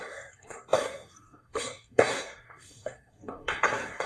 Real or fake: fake